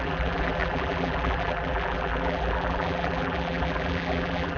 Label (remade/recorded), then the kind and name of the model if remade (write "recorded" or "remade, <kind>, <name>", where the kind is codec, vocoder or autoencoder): remade, vocoder, BigVGAN v2